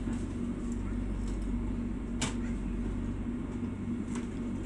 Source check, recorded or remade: recorded